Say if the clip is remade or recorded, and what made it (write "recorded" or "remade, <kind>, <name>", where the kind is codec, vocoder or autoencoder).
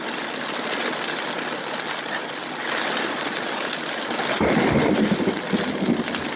recorded